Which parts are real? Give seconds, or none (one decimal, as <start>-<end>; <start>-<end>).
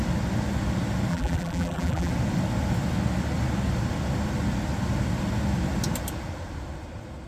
0.0-1.1; 2.1-7.3